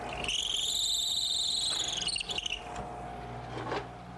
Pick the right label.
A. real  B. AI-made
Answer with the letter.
A